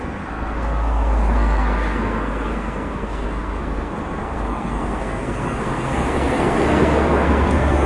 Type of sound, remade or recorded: remade